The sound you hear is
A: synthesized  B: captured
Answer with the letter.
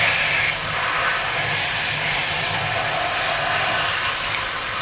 B